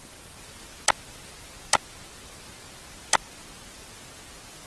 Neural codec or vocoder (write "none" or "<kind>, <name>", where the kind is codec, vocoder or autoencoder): none